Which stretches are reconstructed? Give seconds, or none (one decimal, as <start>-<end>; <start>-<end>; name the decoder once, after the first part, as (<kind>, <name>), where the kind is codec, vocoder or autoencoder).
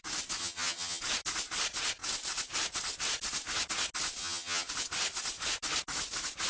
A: 0.4-1.0 (vocoder, HiFi-GAN); 4.2-4.7